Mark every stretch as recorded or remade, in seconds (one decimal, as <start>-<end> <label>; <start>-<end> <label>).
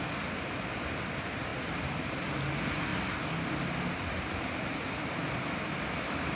0.0-1.5 recorded; 1.5-2.0 remade; 2.0-6.4 recorded